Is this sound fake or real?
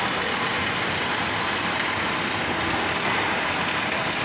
real